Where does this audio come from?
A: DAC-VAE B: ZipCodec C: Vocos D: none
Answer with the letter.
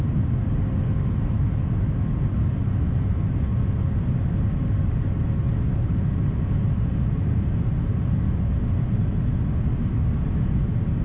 D